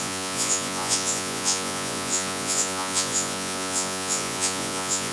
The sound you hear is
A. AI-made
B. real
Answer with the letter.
A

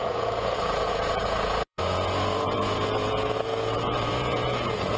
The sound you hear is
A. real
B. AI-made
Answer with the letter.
B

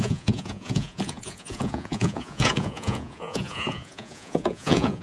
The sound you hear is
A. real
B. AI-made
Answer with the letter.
B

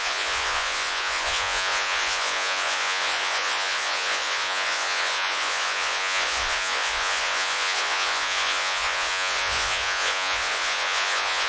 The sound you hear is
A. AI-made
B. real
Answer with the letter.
A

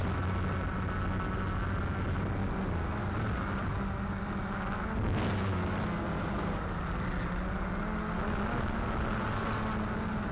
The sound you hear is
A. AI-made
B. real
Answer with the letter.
B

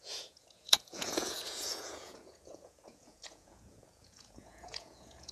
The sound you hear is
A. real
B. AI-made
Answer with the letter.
B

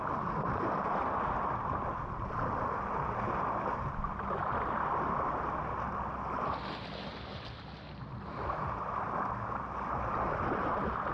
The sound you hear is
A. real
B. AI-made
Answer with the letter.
A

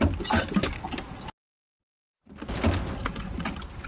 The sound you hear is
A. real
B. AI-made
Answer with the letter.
A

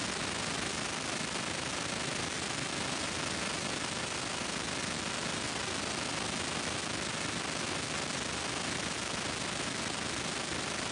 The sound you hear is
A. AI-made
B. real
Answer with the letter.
B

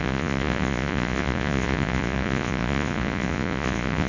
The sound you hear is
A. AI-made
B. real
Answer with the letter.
A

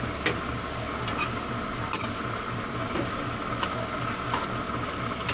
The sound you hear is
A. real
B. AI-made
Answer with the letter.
A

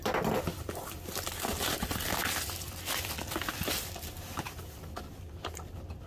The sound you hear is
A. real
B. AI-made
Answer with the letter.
A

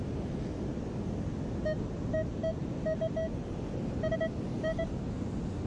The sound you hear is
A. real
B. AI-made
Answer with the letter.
A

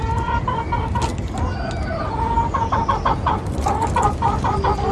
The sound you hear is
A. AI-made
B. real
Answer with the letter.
B